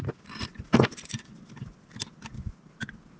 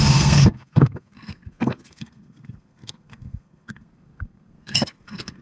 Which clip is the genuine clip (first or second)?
first